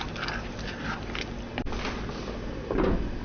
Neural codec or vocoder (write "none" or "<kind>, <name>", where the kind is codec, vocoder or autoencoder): none